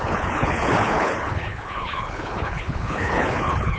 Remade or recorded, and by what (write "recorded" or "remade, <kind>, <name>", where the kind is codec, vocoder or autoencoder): remade, codec, HILCodec